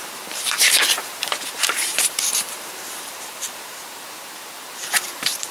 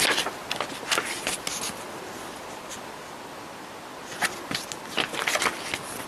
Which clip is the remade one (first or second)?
first